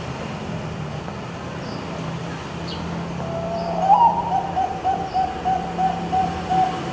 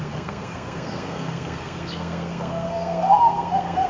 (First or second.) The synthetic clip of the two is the second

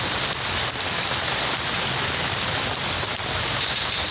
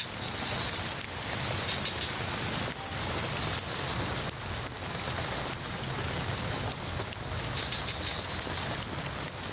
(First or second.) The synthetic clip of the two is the first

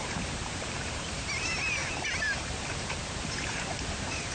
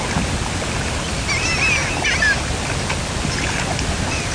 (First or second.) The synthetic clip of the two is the first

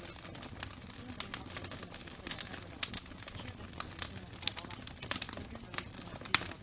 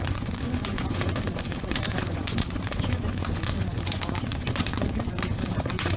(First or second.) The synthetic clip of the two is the second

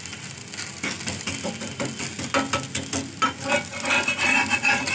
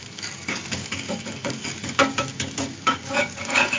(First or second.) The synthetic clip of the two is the second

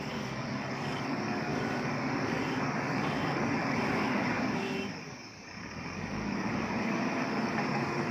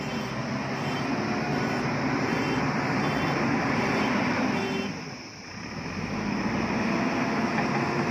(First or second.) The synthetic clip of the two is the first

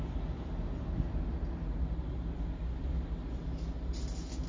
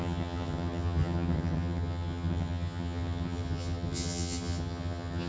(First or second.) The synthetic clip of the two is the second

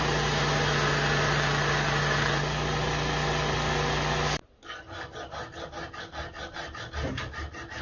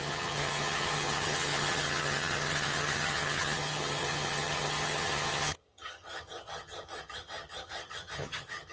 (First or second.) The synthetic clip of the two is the second